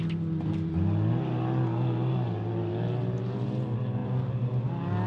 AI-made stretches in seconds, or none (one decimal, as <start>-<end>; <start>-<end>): none